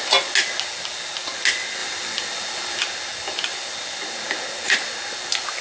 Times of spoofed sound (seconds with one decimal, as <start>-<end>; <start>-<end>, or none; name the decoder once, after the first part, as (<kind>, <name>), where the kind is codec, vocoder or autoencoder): none